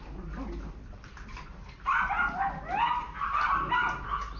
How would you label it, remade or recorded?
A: recorded